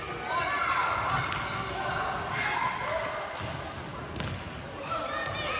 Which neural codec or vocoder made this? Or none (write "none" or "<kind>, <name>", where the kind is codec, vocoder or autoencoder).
none